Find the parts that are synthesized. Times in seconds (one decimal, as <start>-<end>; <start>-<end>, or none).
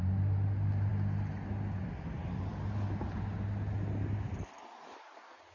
none